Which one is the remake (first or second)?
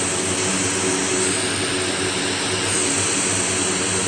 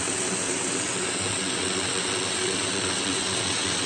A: second